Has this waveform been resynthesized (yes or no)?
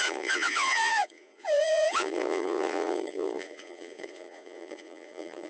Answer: yes